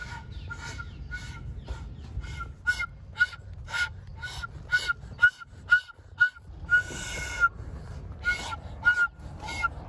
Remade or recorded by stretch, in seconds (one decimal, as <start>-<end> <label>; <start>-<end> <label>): 0.0-9.9 recorded

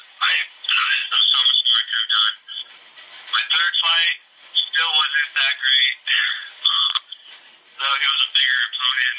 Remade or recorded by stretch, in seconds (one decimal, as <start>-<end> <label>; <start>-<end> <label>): 0.0-1.2 remade; 1.2-4.2 recorded; 4.2-4.7 remade; 4.7-6.2 recorded; 6.2-7.5 remade; 7.5-9.2 recorded